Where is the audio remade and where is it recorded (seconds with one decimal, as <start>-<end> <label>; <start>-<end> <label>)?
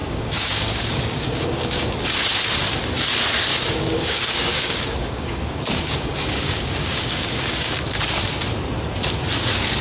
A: 0.0-1.9 remade; 1.9-3.5 recorded; 3.5-7.8 remade; 7.8-9.8 recorded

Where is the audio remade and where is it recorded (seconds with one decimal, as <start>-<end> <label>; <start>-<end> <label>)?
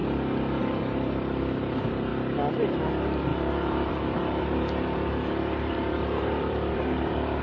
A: 0.0-0.6 recorded; 0.6-7.4 remade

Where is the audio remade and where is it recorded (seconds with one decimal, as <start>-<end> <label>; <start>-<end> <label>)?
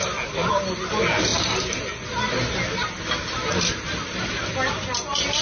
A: 0.0-5.4 recorded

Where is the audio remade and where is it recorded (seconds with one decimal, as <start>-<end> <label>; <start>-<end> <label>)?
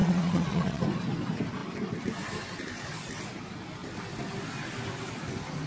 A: 0.0-0.8 remade; 0.8-5.7 recorded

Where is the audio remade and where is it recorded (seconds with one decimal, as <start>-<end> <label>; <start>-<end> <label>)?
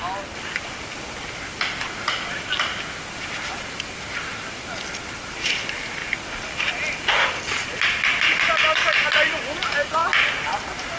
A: 0.0-11.0 recorded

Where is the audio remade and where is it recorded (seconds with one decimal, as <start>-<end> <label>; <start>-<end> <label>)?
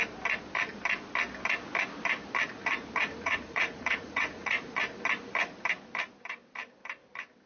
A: 0.0-2.6 recorded; 2.6-4.8 remade; 4.8-7.5 recorded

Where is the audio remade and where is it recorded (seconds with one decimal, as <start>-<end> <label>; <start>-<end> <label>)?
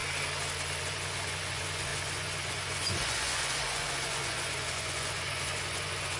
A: 0.0-0.8 recorded; 0.8-6.2 remade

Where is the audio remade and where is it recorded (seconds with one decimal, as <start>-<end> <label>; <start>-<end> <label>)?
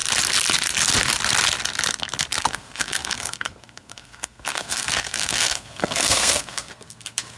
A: 0.0-2.4 recorded; 2.4-7.4 remade